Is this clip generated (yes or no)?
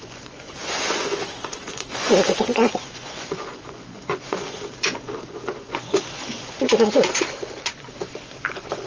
yes